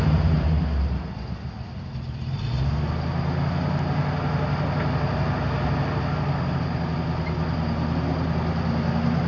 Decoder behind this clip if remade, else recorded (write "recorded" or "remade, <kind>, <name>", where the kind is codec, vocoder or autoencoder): recorded